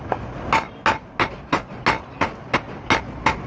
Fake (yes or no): no